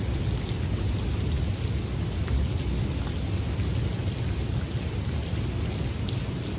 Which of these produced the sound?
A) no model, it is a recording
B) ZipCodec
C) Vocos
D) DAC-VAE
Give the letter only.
A